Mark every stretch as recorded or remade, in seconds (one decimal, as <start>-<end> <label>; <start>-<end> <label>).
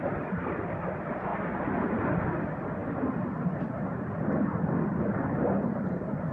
0.0-6.3 recorded